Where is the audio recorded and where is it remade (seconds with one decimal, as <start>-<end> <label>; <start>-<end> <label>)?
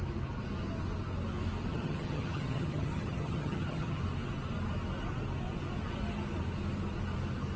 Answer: 0.0-1.7 recorded; 1.7-4.0 remade; 4.0-7.6 recorded